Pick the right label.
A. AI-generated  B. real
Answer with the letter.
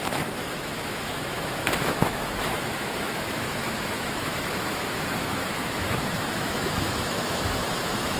A